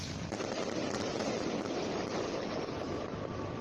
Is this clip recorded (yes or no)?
no